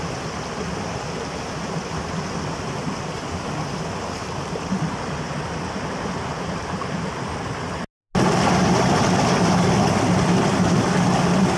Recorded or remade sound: recorded